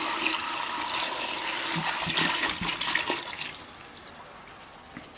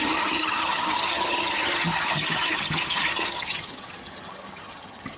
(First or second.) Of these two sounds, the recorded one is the first